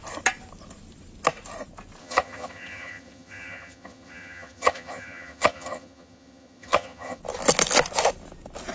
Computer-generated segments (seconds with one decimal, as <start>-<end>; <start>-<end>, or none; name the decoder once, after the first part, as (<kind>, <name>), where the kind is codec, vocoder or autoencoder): 2.0-7.2 (vocoder, HiFi-GAN)